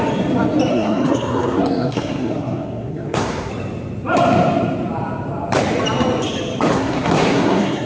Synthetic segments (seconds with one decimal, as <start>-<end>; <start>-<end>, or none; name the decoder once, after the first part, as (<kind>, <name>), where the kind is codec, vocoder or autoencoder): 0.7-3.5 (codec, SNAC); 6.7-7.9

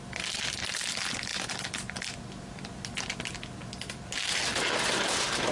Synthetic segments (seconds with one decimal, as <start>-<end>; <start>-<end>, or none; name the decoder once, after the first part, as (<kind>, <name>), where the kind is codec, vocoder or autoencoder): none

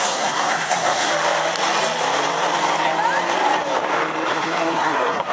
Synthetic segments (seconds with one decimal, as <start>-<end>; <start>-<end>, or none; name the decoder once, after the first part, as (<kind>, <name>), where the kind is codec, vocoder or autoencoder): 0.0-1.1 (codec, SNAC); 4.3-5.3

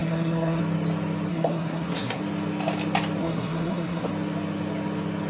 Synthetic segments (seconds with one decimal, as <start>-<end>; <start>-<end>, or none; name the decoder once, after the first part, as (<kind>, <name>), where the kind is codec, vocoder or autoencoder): 0.0-0.6 (codec, SNAC); 1.3-2.2; 3.2-4.1

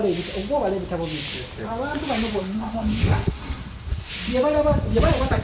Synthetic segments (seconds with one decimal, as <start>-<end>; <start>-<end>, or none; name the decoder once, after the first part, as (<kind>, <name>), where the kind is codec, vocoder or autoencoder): 2.4-4.1 (codec, SNAC)

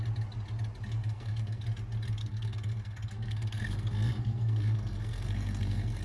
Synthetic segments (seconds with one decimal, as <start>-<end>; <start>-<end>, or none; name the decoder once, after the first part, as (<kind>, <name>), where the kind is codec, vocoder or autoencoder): 1.0-1.6 (codec, SNAC); 2.2-6.0

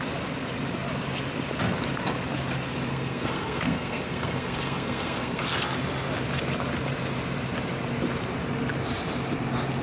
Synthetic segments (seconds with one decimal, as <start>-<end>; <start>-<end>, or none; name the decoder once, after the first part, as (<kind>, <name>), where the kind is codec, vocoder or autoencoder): 2.9-5.4 (codec, SNAC)

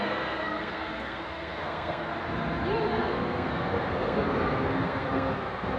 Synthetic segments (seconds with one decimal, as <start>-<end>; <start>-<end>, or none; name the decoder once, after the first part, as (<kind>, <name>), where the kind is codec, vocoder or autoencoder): 0.0-2.1 (codec, SNAC); 2.9-5.8